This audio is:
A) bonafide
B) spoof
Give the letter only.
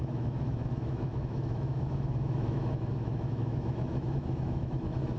B